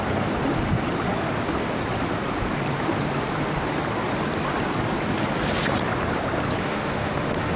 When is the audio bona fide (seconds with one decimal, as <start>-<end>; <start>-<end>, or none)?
0.0-6.6